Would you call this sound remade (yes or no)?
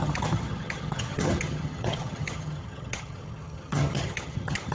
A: yes